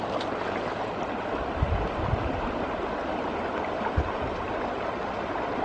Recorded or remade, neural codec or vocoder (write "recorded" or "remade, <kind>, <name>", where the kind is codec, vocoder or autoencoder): recorded